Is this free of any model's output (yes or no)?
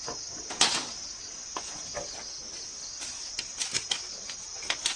yes